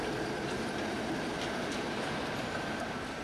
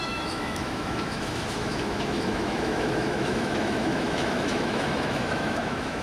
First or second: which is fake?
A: second